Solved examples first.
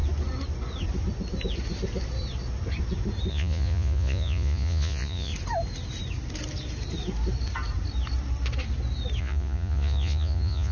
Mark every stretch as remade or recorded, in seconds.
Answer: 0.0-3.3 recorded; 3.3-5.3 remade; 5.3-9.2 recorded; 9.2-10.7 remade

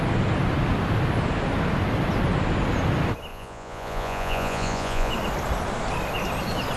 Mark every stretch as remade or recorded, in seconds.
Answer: 0.0-3.3 recorded; 3.3-5.1 remade; 5.1-6.8 recorded

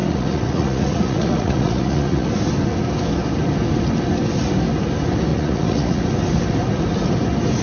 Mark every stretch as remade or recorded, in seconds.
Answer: 0.0-2.3 remade; 2.3-5.3 recorded; 5.3-6.0 remade; 6.0-7.6 recorded

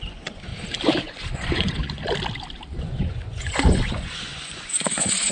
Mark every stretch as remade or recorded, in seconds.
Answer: 0.0-0.5 remade; 0.5-1.0 recorded; 1.0-2.0 remade; 2.0-2.7 recorded; 2.7-5.3 remade

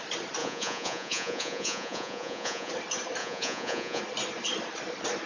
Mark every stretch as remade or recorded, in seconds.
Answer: 0.0-0.4 recorded; 0.4-2.7 remade; 2.7-3.2 recorded; 3.2-4.0 remade; 4.0-5.3 recorded

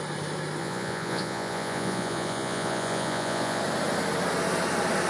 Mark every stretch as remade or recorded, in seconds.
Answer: 0.0-0.6 recorded; 0.6-3.6 remade; 3.6-5.1 recorded